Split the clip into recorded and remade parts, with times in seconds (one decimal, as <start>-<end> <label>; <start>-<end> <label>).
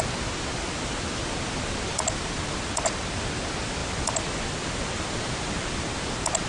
0.0-3.8 recorded; 3.8-5.7 remade; 5.7-6.5 recorded